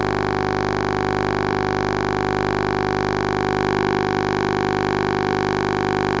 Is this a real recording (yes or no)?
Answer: yes